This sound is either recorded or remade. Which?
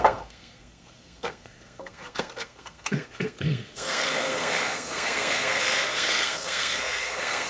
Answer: remade